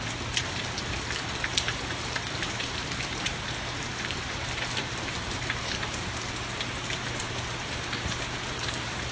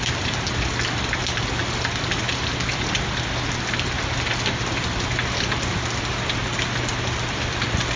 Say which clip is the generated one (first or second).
first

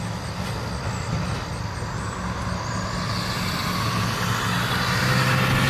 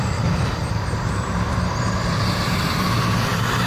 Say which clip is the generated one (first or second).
second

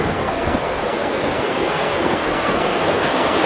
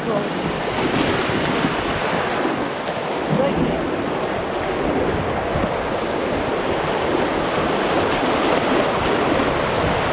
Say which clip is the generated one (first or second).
first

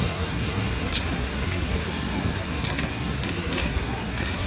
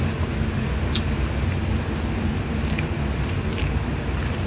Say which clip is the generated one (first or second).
first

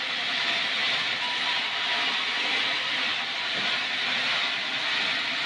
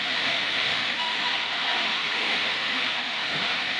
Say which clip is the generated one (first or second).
second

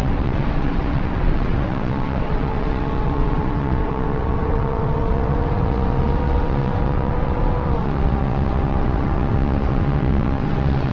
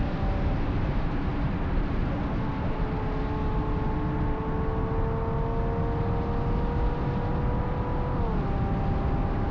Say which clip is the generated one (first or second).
first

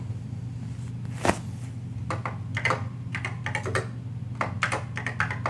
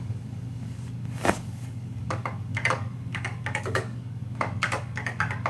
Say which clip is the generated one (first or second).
second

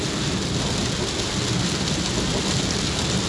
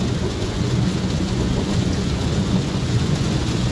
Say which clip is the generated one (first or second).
second